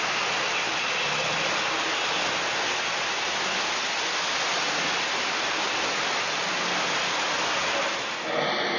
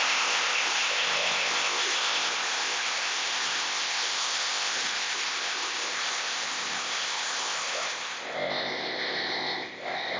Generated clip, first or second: second